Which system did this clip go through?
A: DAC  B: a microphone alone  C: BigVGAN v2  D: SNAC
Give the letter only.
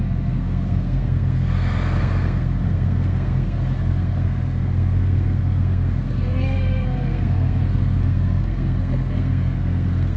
D